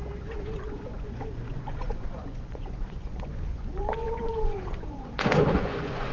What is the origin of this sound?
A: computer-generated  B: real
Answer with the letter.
A